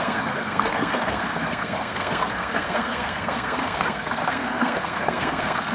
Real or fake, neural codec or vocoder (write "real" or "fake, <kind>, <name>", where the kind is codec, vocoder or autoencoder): fake, codec, SNAC